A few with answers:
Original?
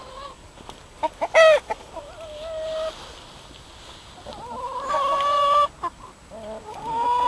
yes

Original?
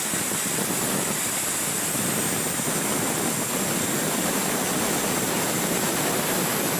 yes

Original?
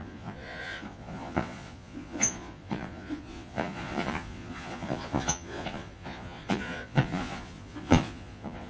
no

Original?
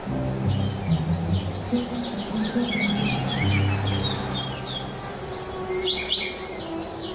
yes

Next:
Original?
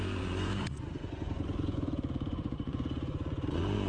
no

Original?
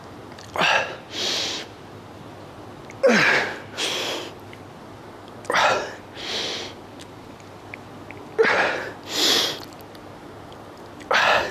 yes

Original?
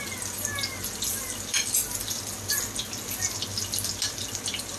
yes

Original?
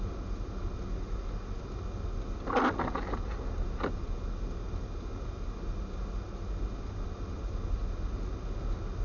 yes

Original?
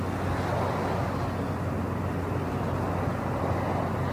yes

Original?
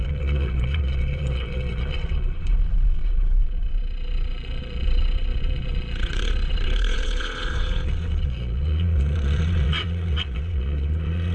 no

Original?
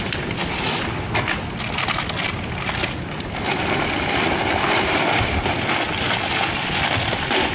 yes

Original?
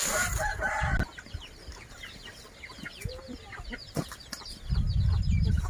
yes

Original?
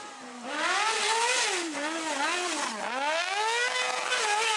yes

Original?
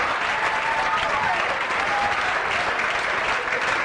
yes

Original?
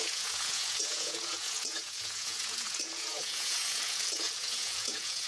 no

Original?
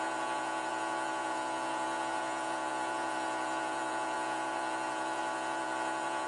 no